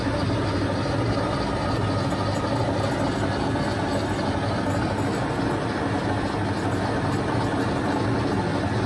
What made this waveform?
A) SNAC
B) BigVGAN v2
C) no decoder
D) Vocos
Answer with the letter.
C